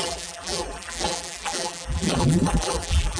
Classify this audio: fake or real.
fake